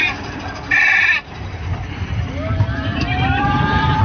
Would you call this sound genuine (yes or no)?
no